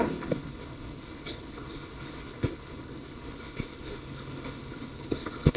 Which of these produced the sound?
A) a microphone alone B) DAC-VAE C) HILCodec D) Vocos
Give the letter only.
C